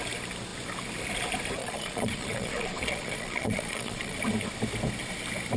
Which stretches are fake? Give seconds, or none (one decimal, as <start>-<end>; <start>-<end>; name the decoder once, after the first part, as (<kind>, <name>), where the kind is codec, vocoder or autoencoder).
1.6-4.2 (vocoder, Vocos)

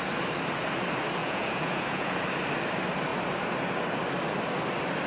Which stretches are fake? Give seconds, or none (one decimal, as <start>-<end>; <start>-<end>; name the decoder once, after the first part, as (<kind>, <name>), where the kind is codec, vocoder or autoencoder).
1.2-2.1 (vocoder, Vocos)

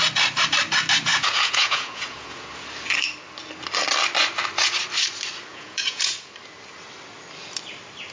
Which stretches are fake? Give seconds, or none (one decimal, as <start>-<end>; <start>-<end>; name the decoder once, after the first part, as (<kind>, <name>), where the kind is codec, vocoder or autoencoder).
1.1-2.5 (vocoder, Vocos); 5.5-6.3

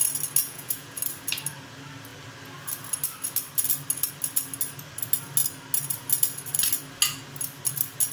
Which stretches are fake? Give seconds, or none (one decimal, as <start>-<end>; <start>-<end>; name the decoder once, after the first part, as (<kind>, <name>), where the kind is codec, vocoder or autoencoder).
0.4-1.0 (vocoder, Vocos)

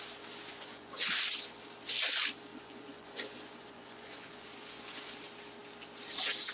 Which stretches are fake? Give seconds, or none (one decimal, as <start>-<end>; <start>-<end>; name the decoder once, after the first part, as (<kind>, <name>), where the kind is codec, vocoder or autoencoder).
0.5-1.1 (vocoder, Vocos); 2.5-5.1

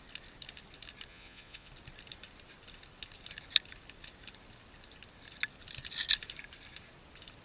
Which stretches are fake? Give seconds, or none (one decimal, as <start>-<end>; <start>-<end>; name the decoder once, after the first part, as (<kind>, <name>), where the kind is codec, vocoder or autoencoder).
1.1-1.7 (vocoder, Vocos)

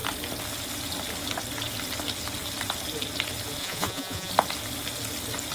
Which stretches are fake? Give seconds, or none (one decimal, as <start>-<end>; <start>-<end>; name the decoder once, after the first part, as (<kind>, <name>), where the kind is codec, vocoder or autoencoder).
3.6-4.3 (vocoder, Vocos)

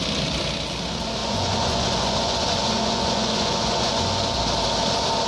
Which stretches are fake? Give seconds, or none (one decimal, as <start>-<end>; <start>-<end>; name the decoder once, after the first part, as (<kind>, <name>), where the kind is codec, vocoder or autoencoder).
1.2-4.4 (vocoder, Vocos)